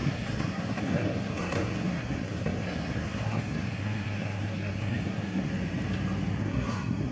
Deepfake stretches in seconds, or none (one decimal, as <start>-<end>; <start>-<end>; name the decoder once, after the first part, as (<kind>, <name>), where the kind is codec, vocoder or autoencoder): 0.0-5.5 (codec, SNAC); 6.4-7.1